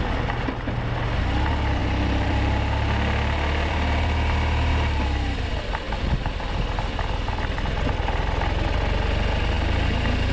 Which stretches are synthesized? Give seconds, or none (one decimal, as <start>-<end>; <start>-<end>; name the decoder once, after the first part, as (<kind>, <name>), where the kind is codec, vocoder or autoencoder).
1.8-5.5 (vocoder, BigVGAN v2)